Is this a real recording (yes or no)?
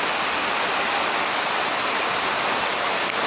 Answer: yes